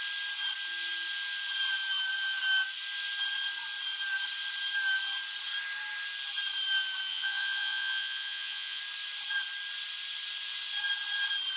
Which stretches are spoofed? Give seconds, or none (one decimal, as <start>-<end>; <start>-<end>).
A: 7.1-8.8

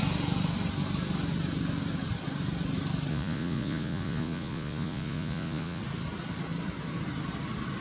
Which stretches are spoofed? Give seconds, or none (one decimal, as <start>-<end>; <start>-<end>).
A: 3.1-5.8

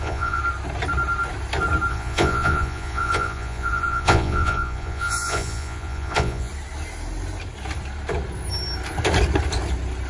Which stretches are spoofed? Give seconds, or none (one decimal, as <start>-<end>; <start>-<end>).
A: 0.0-0.4; 1.9-6.5

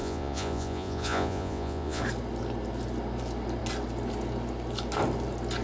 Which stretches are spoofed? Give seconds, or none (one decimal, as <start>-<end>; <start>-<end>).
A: 0.0-2.0

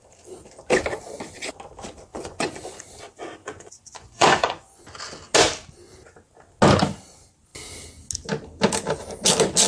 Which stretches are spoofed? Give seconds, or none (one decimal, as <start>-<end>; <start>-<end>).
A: 2.1-2.8; 3.4-4.8

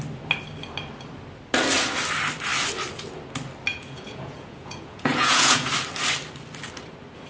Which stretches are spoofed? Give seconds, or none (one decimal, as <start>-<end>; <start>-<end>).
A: 3.7-5.7

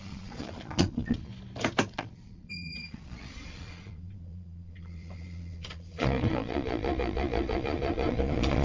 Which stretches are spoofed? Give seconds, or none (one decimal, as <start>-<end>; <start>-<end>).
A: 0.0-1.3; 1.9-8.6

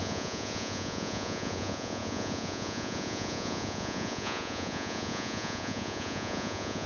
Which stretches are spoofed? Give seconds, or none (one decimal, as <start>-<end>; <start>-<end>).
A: 0.0-6.9